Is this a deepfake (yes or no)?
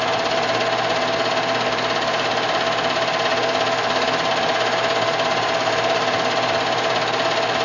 no